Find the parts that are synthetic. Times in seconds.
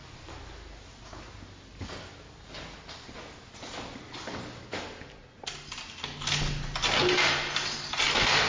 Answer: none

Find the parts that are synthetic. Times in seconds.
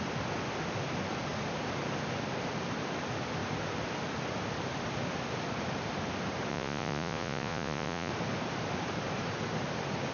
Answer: 6.5-8.1 (vocoder, Vocos)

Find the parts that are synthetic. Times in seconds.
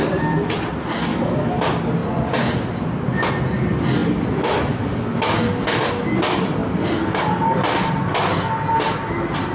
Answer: 1.1-1.6 (autoencoder, DAC-VAE)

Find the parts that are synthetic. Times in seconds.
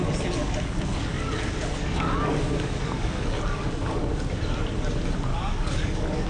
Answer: 0.4-4.2 (codec, DAC); 5.3-6.3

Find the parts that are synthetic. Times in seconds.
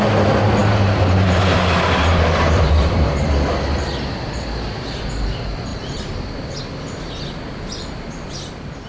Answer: 0.6-3.2 (vocoder, BigVGAN v2); 5.7-6.6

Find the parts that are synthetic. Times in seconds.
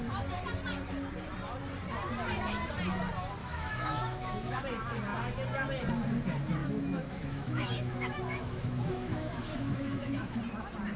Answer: 3.4-4.6 (autoencoder, DAC-VAE); 6.6-10.4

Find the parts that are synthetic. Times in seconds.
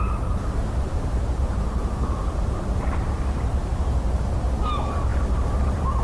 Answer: 0.0-6.0 (vocoder, BigVGAN v2)